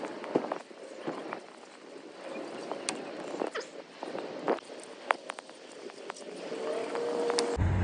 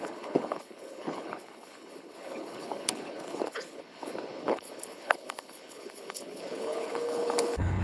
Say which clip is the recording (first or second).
first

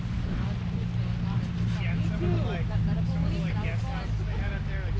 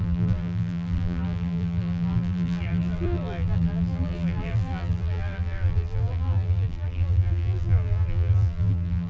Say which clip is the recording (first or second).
first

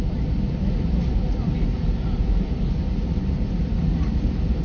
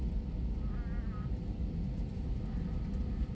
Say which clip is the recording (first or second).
second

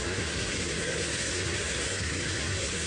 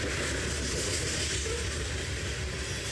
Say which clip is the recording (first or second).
second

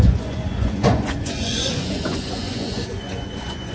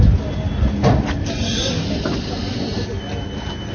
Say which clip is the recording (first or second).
second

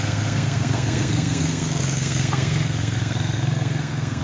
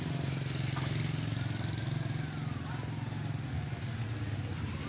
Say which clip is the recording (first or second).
second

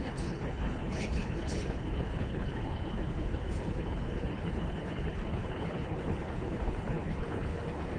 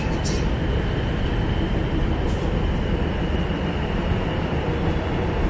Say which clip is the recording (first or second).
second